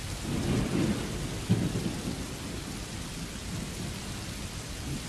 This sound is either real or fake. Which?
real